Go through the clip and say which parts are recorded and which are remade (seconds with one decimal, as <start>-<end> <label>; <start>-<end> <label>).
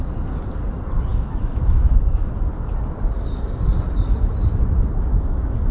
0.0-1.1 recorded; 1.1-2.3 remade; 2.3-5.7 recorded